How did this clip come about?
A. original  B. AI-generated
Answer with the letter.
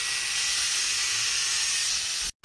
A